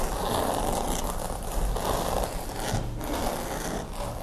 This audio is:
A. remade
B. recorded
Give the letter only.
B